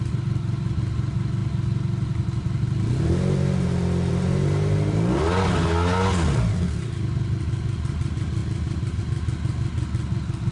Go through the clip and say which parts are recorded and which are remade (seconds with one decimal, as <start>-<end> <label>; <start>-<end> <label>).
0.0-10.5 recorded